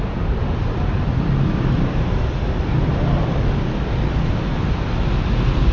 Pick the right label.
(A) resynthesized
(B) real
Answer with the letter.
A